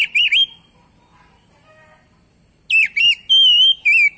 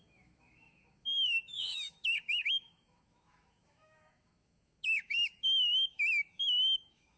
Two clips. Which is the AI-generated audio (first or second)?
second